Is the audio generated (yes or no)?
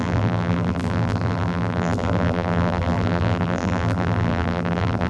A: yes